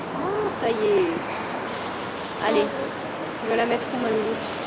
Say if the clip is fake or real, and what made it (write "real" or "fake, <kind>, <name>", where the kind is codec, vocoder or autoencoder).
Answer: real